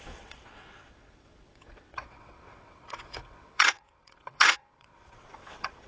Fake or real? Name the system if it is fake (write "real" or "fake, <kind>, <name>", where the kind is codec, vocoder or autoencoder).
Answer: fake, vocoder, WaveNeXt